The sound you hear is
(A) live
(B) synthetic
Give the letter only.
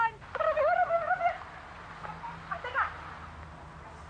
A